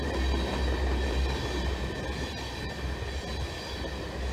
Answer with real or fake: real